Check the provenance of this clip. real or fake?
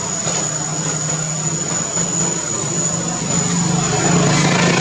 real